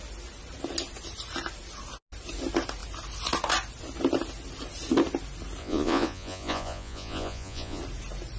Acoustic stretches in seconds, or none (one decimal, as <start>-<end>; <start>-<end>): 0.0-5.6; 7.8-8.4